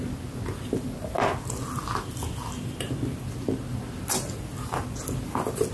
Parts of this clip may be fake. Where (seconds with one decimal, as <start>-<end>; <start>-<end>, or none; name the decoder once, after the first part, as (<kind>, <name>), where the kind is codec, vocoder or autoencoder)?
none